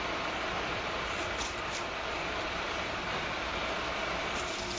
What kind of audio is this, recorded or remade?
remade